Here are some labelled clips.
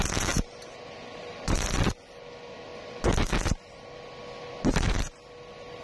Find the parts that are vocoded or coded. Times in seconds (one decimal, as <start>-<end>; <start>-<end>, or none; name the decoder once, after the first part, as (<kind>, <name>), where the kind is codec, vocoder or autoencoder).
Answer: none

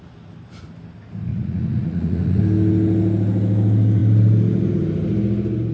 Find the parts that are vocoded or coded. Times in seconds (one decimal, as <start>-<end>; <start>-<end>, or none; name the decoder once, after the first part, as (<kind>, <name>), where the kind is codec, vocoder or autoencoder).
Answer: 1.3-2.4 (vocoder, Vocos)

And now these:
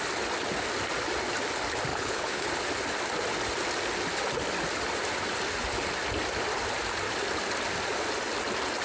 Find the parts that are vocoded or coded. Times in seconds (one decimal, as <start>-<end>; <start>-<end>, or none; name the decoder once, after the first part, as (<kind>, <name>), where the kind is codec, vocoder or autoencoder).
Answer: 1.9-2.5 (codec, HILCodec)

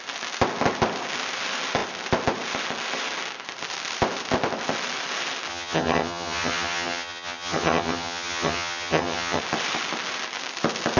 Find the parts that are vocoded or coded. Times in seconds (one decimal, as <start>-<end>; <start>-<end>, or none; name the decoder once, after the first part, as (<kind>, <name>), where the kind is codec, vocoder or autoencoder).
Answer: 5.5-9.4 (vocoder, HiFi-GAN)

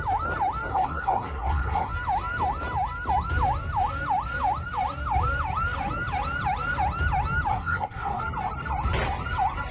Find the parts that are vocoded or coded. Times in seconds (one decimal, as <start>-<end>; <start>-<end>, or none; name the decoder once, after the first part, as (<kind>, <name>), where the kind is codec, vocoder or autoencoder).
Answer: 0.7-1.9 (codec, SNAC); 7.5-8.2